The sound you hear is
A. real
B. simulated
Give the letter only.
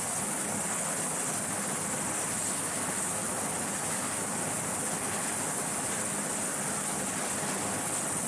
A